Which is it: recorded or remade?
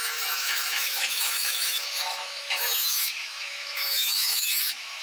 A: remade